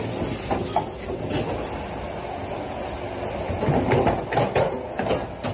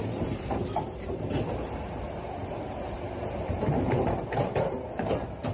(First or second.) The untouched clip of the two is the first